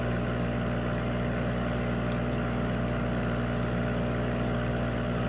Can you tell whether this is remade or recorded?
recorded